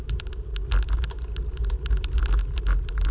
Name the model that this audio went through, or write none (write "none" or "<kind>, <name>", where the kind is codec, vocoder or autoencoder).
none